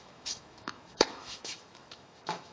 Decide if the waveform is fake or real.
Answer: fake